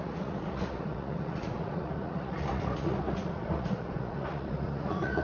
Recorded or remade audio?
remade